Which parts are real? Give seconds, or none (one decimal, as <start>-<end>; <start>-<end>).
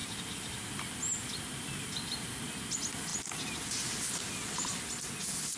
0.0-5.6